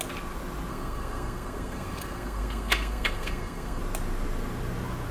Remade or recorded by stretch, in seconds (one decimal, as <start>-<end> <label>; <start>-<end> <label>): 0.0-0.7 recorded; 0.7-3.8 remade; 3.8-5.1 recorded